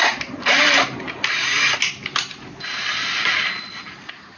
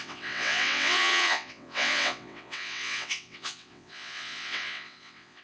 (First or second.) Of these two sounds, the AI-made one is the second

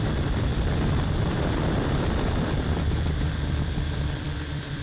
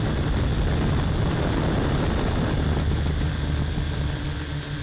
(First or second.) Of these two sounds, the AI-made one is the first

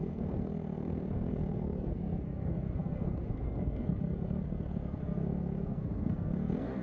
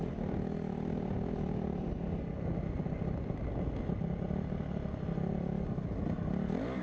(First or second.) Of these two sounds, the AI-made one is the first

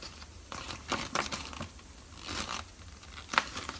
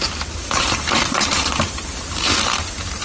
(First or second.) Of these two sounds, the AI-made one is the second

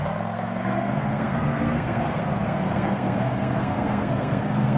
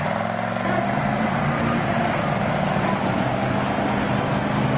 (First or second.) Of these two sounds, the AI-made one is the first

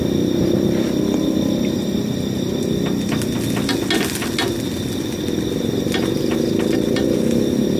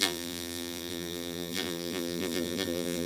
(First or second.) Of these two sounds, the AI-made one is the second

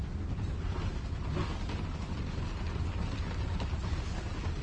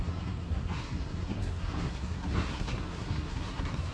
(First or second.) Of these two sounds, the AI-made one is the second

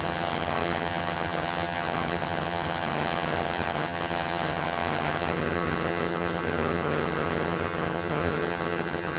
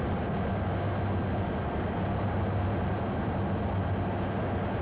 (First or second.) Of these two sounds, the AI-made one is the first